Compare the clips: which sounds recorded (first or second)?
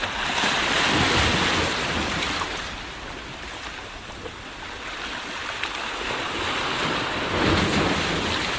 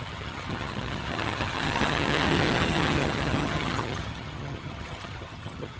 first